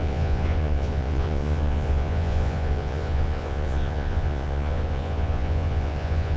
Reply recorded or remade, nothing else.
remade